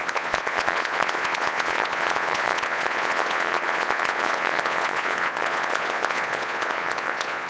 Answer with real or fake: fake